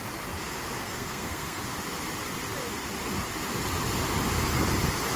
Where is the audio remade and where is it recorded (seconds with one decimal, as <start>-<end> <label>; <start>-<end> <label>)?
0.0-0.8 recorded; 0.8-1.6 remade; 1.6-5.2 recorded